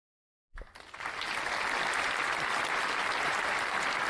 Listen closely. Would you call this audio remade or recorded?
recorded